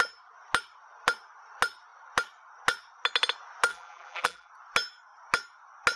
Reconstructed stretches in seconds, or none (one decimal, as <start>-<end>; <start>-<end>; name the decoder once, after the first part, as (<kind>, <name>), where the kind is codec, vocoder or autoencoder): 3.7-4.5 (vocoder, BigVGAN v2)